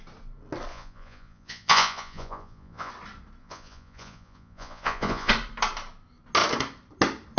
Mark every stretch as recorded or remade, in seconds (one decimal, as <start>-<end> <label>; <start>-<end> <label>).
0.0-0.7 recorded; 0.7-2.9 remade; 2.9-3.4 recorded; 3.4-5.3 remade; 5.3-7.4 recorded